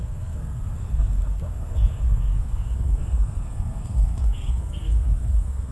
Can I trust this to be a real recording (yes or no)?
no